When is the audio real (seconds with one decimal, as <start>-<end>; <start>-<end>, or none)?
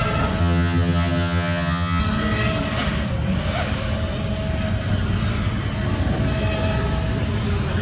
0.0-0.4; 2.0-7.8